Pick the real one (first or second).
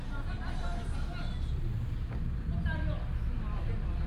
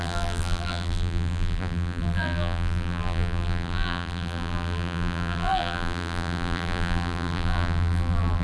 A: first